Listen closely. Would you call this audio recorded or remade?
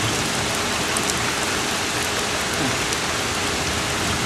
recorded